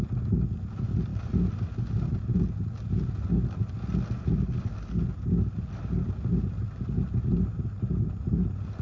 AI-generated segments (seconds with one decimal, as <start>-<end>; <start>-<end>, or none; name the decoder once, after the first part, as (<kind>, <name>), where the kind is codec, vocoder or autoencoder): none